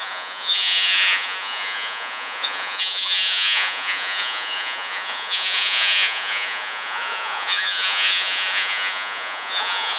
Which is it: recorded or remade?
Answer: remade